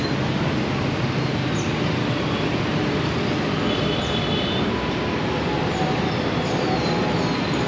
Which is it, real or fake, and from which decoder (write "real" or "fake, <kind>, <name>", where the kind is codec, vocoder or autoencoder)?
real